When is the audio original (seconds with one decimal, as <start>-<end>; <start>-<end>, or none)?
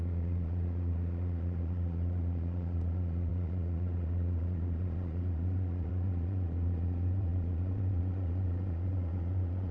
none